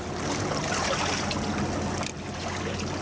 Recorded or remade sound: recorded